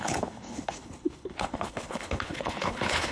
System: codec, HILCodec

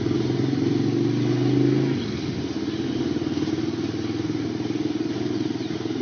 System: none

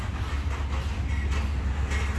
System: none